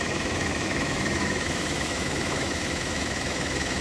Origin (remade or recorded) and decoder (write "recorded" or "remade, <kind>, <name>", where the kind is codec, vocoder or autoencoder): remade, autoencoder, DAC-VAE